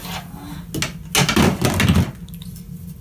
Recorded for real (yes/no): yes